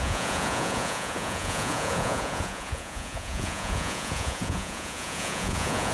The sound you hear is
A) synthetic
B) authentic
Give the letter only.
A